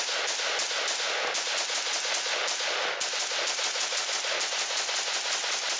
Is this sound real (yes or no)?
yes